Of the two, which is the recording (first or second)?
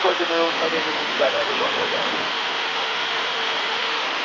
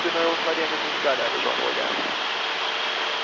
second